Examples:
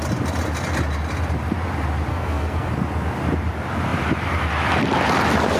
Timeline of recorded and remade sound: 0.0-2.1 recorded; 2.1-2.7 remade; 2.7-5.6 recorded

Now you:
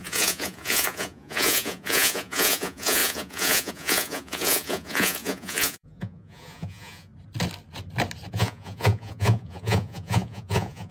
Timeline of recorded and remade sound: 0.0-7.1 remade; 7.1-8.3 recorded; 8.3-10.9 remade

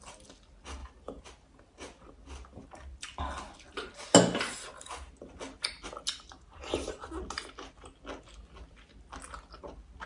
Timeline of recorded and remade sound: 0.0-0.8 recorded; 0.8-2.1 remade; 2.1-10.1 recorded

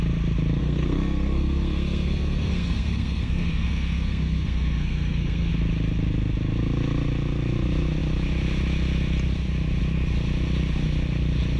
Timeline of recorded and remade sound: 0.0-0.6 recorded; 0.6-5.5 remade; 5.5-11.6 recorded

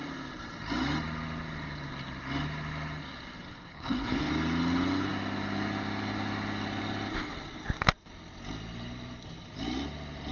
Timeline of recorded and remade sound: 0.0-3.5 recorded; 3.5-4.3 remade; 4.3-10.3 recorded

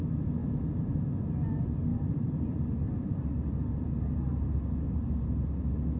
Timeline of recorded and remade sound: 0.0-0.4 recorded; 0.4-0.9 remade; 0.9-1.9 recorded; 1.9-5.5 remade; 5.5-6.0 recorded

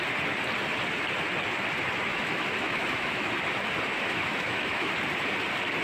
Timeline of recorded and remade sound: 0.0-2.1 recorded; 2.1-3.3 remade; 3.3-3.9 recorded; 3.9-4.9 remade; 4.9-5.8 recorded

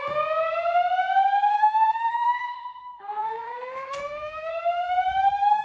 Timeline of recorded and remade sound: 0.0-1.5 recorded; 1.5-4.5 remade; 4.5-5.6 recorded